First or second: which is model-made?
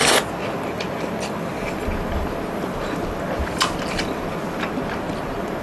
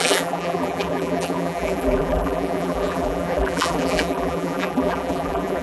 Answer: second